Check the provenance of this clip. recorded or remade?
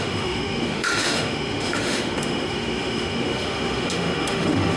remade